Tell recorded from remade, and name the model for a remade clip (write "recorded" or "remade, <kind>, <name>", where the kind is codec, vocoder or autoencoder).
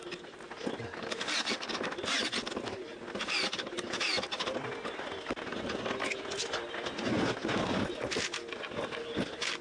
recorded